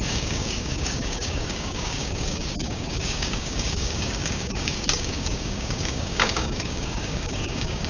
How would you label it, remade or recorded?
remade